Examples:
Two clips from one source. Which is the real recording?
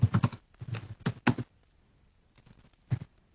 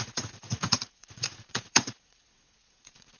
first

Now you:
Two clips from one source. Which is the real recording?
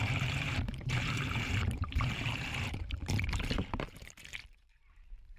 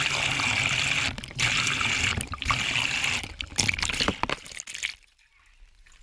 second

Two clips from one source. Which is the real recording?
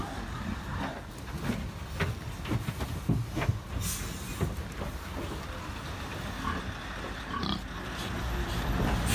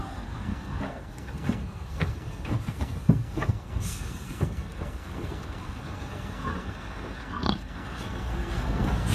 first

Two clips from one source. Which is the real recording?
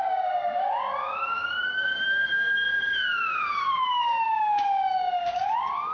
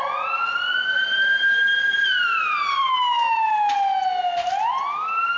second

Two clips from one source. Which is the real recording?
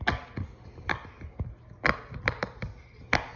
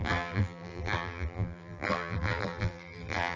first